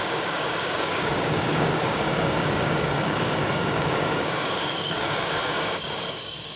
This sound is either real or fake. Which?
fake